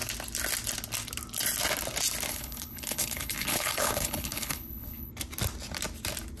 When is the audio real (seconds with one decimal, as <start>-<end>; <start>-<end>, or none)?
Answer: 0.0-2.3; 5.1-6.4